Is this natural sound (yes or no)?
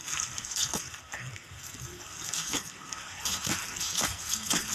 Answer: no